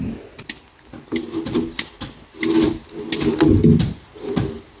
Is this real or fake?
real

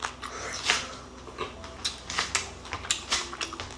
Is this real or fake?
real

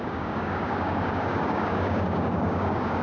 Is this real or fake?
fake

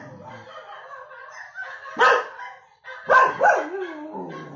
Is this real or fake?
real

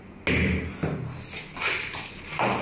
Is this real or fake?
real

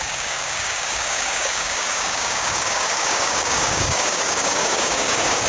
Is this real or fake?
fake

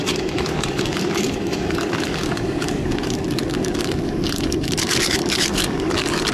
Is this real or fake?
fake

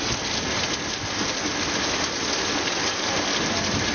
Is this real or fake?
real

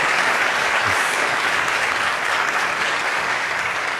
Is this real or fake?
fake